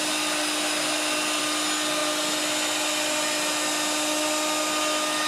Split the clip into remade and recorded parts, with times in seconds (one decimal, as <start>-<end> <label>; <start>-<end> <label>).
0.0-5.3 recorded